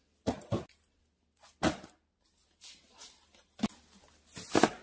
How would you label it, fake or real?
real